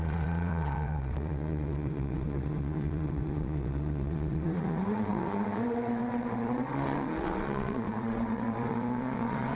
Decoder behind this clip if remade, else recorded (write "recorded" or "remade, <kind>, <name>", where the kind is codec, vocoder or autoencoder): remade, vocoder, WaveNeXt